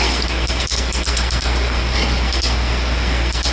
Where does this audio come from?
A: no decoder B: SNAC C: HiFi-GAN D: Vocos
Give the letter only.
B